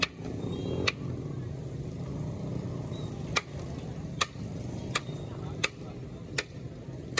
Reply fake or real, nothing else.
real